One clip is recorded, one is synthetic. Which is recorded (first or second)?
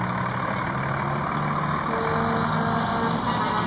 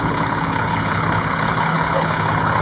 first